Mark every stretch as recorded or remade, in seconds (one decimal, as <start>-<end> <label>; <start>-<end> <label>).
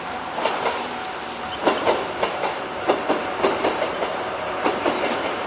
0.0-5.5 remade